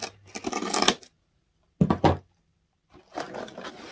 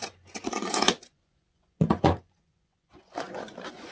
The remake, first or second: second